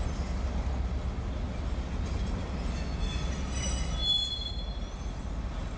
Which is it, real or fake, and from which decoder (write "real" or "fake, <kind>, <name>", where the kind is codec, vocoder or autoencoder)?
real